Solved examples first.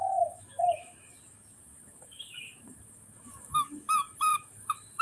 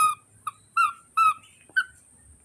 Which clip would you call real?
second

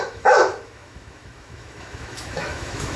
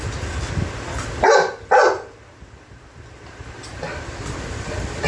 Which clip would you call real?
second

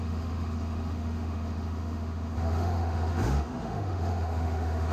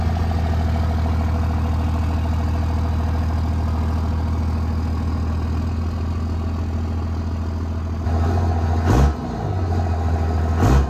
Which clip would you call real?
second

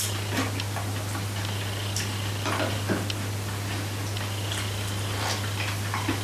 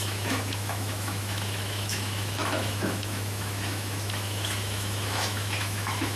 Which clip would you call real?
first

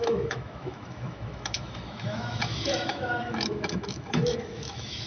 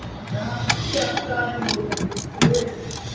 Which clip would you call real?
second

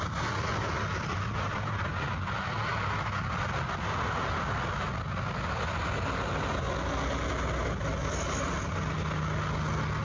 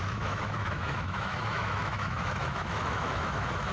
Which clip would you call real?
first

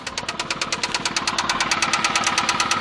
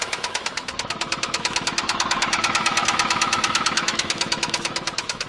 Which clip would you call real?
first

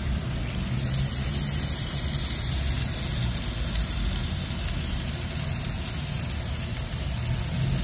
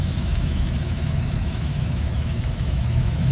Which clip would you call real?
first